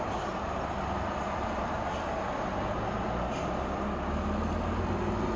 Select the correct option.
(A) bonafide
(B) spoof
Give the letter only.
A